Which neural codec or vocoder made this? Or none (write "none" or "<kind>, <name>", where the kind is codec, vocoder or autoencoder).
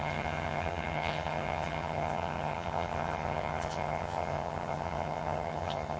vocoder, HiFi-GAN